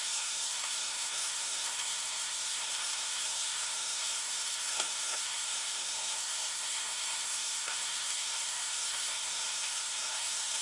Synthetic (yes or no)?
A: yes